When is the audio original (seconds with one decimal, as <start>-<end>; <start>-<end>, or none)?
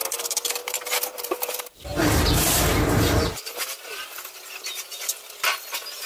none